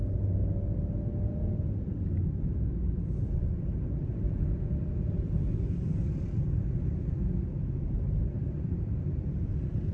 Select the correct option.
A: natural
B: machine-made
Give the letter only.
A